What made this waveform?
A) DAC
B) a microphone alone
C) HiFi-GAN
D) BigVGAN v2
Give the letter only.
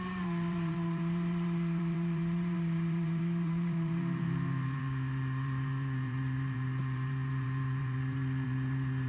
D